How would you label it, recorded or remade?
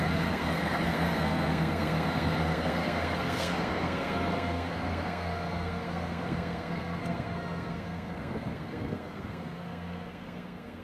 remade